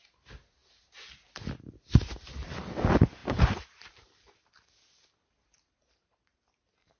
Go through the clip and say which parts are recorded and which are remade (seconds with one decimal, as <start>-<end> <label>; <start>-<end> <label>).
0.0-0.6 remade; 0.6-2.7 recorded; 2.7-7.0 remade